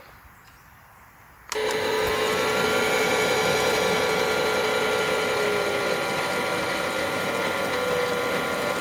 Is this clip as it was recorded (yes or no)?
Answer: yes